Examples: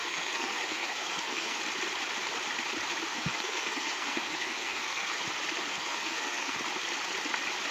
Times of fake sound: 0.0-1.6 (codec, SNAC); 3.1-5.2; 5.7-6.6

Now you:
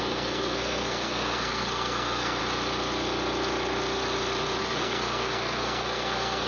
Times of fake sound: 0.0-2.4 (codec, SNAC); 4.6-6.5

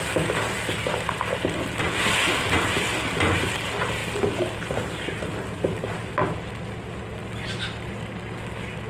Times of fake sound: none

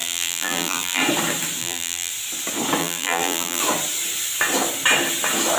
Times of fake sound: 0.0-1.0 (vocoder, BigVGAN v2); 1.6-2.1; 2.8-3.6

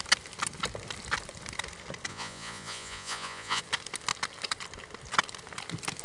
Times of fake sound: 2.1-3.6 (vocoder, Vocos)

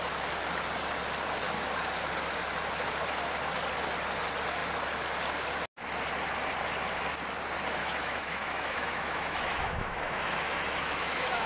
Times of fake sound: 7.8-11.5 (autoencoder, DAC-VAE)